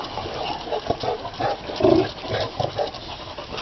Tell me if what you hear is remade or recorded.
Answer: recorded